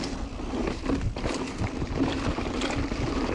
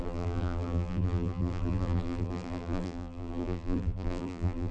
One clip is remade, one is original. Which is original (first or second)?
first